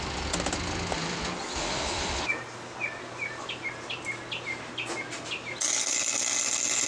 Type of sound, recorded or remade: recorded